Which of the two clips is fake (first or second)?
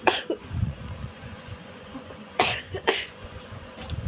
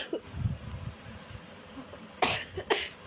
first